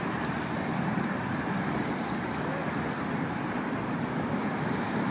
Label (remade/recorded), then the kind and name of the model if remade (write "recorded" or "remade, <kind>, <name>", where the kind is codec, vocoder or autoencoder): recorded